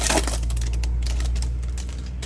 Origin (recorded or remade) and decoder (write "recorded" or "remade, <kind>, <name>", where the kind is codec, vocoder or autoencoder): recorded